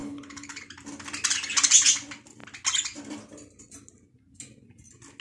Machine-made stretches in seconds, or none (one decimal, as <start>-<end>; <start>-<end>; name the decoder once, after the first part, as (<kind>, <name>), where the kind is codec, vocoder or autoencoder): 0.0-0.6 (codec, HILCodec)